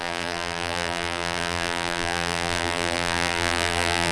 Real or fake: fake